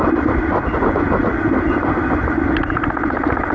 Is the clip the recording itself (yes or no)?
yes